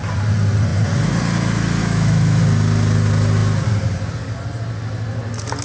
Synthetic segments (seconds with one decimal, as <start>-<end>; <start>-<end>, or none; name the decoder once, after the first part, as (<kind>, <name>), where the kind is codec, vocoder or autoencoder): 1.8-2.4 (autoencoder, DAC-VAE)